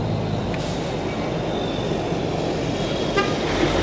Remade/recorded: recorded